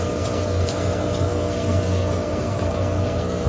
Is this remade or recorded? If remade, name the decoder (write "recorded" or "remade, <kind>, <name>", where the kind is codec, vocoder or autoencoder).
remade, codec, SNAC